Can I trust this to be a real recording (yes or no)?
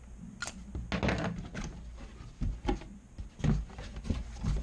yes